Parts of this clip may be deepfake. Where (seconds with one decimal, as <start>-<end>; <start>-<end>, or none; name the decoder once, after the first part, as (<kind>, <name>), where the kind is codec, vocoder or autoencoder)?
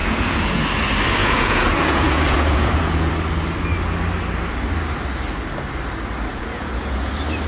0.0-0.6 (vocoder, Vocos); 1.2-3.1; 6.3-7.1